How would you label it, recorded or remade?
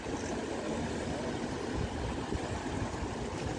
recorded